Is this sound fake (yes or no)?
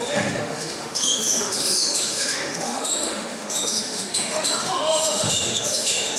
yes